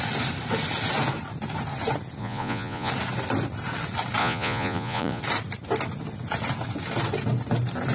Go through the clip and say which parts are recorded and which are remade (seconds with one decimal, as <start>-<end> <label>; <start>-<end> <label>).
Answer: 0.0-2.2 recorded; 2.2-2.9 remade; 2.9-4.2 recorded; 4.2-5.2 remade; 5.2-7.9 recorded